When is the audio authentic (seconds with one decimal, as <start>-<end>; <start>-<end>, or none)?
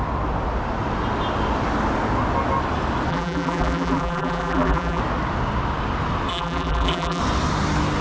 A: 0.0-3.1; 5.0-6.3; 7.2-8.0